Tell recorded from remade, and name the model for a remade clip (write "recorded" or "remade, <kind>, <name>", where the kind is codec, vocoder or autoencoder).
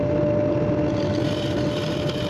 recorded